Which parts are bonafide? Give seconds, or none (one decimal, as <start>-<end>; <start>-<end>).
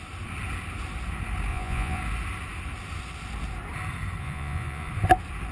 0.0-1.5; 2.0-4.2; 4.9-5.5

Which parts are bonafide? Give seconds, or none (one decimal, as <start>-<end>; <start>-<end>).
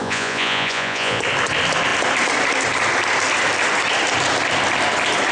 1.2-5.3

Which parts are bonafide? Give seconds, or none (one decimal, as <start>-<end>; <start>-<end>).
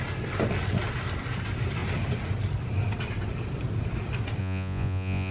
0.0-4.4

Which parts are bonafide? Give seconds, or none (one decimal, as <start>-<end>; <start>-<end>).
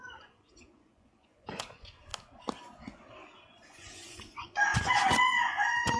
2.1-3.5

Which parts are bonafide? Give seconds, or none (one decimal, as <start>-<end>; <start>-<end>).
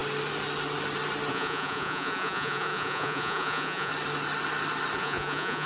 0.0-1.3; 3.9-5.0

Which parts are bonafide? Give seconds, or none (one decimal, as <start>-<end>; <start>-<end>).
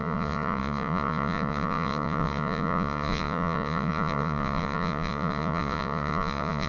none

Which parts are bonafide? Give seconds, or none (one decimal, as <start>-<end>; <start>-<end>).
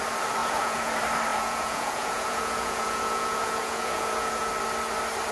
0.0-0.4; 0.9-1.3; 4.5-5.3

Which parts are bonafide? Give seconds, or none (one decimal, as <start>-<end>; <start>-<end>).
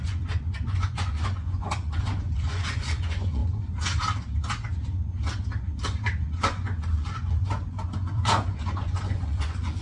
3.4-6.2